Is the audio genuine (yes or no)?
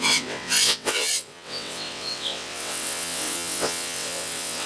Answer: no